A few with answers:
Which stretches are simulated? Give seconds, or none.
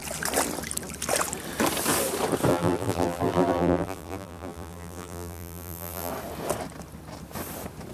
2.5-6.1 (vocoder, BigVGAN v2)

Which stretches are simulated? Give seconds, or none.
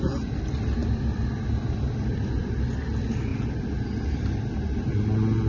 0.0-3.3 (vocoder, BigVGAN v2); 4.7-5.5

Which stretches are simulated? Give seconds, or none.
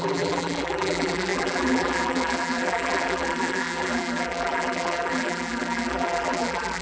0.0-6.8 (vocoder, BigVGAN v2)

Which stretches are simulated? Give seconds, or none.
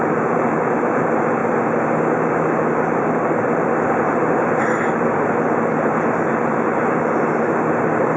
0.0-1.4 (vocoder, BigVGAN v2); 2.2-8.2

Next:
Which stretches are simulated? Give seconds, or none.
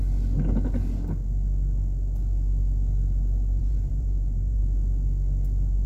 3.6-4.6 (vocoder, BigVGAN v2)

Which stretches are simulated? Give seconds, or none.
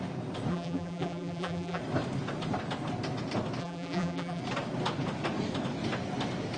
0.5-1.8 (vocoder, BigVGAN v2); 3.6-4.4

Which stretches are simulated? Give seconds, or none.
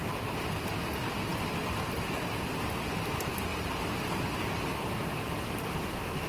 3.5-4.0 (vocoder, BigVGAN v2)